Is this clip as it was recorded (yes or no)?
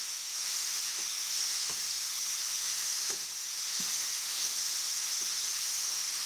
no